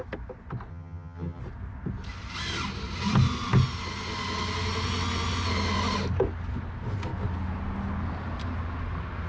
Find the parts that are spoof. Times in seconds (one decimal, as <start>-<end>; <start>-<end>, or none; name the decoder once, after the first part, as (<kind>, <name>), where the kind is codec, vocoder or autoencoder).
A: 0.7-1.4 (vocoder, HiFi-GAN)